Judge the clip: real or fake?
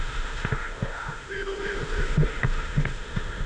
fake